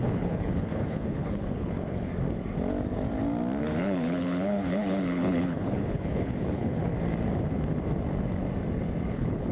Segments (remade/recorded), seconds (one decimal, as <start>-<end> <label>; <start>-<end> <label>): 0.0-2.1 remade; 2.1-3.6 recorded; 3.6-6.8 remade; 6.8-9.1 recorded; 9.1-9.5 remade